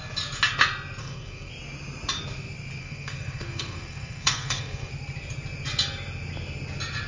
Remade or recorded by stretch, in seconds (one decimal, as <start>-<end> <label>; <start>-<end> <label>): 0.0-1.0 recorded; 1.0-1.5 remade; 1.5-2.8 recorded; 2.8-4.9 remade; 4.9-7.1 recorded